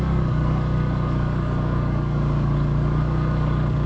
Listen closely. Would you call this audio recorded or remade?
remade